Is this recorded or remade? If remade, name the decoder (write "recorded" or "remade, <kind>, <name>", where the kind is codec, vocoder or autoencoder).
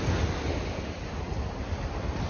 recorded